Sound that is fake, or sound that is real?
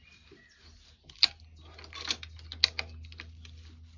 real